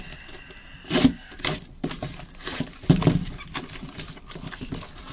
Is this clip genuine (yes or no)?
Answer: yes